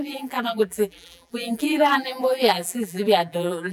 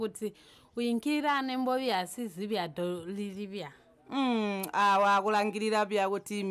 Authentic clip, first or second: second